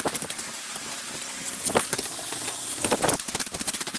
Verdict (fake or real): real